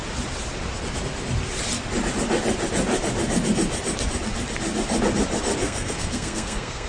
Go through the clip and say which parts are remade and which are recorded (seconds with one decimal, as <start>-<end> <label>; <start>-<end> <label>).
0.0-5.6 recorded; 5.6-6.9 remade